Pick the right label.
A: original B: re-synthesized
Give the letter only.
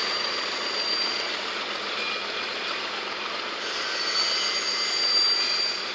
A